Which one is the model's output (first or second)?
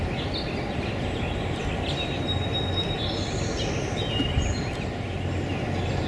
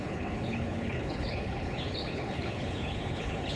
second